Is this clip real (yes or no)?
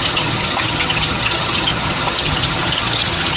no